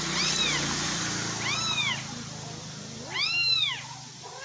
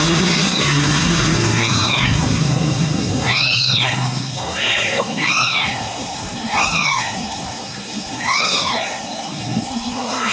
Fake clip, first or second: second